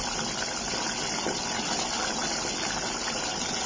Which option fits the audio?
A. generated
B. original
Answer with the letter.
B